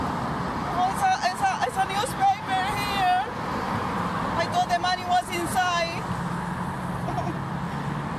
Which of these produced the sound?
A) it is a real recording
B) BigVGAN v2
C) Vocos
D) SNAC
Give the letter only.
A